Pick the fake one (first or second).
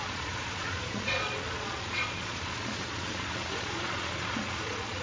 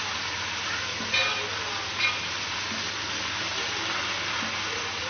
first